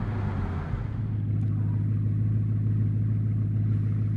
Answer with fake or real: real